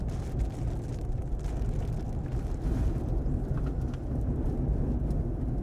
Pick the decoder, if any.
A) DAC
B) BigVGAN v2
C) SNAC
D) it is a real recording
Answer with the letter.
D